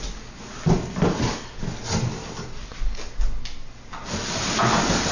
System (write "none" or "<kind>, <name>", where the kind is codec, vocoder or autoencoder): none